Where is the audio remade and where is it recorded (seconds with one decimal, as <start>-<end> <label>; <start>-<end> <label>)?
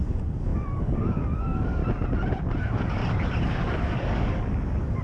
0.0-1.8 remade; 1.8-2.6 recorded; 2.6-3.0 remade; 3.0-3.5 recorded; 3.5-5.0 remade